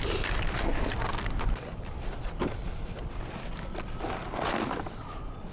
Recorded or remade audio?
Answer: recorded